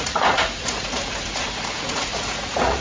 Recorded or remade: remade